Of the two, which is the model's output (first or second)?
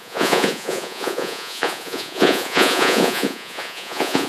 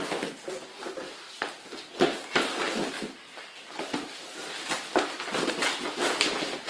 first